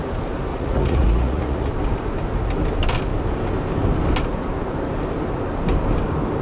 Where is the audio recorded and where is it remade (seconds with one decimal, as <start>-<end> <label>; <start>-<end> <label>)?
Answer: 0.0-0.5 recorded; 0.5-1.7 remade; 1.7-6.4 recorded